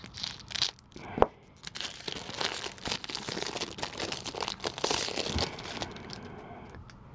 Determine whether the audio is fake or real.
real